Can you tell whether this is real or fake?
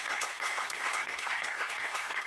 fake